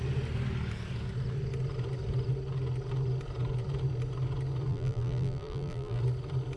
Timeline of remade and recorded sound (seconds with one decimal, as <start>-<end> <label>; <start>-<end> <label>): 0.0-4.7 recorded; 4.7-6.0 remade; 6.0-6.6 recorded